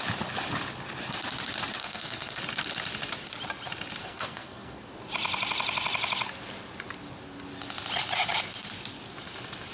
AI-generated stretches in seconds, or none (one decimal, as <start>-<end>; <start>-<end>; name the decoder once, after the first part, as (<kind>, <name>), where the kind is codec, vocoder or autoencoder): 1.8-2.4 (codec, SNAC); 4.0-4.8